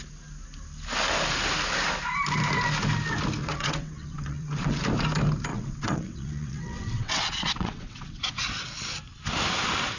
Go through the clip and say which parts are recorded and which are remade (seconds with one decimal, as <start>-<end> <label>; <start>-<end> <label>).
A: 0.0-3.4 recorded; 3.4-4.8 remade; 4.8-5.5 recorded; 5.5-8.4 remade; 8.4-10.0 recorded